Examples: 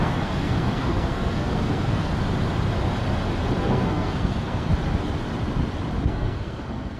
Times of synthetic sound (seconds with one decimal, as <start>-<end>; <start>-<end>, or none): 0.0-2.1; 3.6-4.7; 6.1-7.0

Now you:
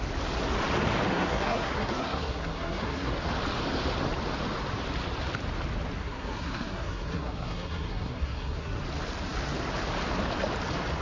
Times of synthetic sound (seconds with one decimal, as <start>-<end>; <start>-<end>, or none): 1.1-3.1; 6.0-8.8

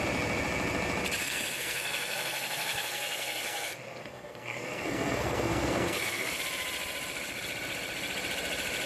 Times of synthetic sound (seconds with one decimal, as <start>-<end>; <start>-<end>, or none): 1.2-6.4